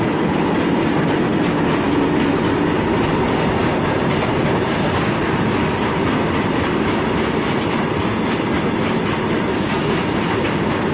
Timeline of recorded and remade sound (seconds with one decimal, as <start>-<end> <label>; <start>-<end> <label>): 0.0-10.9 recorded